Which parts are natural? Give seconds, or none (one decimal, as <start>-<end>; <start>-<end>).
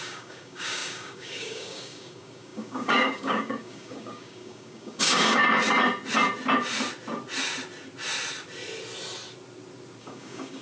5.4-10.0